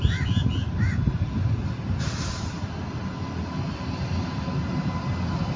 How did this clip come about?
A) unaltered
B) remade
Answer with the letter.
A